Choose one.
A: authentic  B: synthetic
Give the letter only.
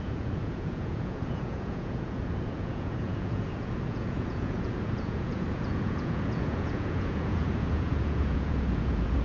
B